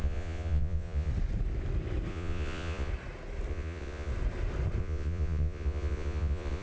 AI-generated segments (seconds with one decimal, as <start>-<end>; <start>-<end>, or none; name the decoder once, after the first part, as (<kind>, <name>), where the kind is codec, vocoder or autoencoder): 0.0-1.1 (vocoder, Vocos); 2.1-2.9; 3.5-4.1; 4.8-6.6